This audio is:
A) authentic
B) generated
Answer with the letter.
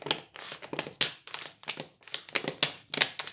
A